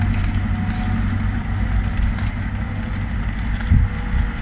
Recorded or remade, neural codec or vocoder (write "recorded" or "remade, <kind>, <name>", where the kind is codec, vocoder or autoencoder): recorded